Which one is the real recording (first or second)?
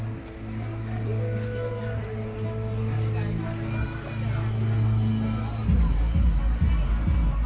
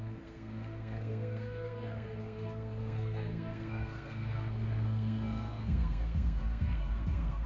first